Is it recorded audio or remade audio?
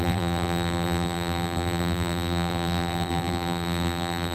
remade